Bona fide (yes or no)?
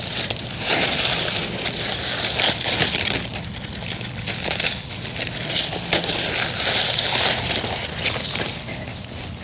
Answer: yes